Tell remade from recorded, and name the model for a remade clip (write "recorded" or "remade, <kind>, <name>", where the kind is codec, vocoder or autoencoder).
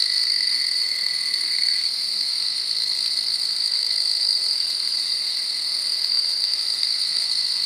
remade, codec, SNAC